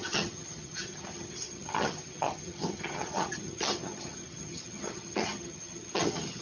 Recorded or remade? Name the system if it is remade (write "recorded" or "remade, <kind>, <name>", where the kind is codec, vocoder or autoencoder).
remade, vocoder, HiFi-GAN